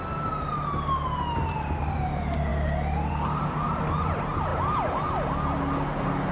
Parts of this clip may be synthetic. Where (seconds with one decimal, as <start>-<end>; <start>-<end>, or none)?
none